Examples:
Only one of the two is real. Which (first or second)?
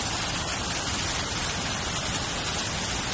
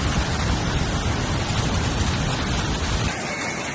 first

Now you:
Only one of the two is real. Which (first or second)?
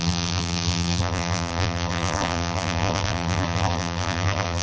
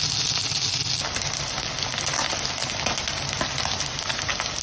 second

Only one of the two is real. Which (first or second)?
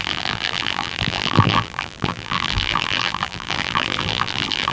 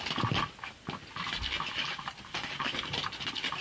second